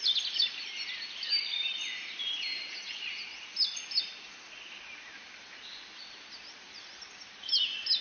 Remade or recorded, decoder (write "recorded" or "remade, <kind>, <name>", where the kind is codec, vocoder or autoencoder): recorded